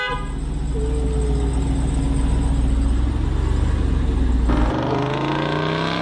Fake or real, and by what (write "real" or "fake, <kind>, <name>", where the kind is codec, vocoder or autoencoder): real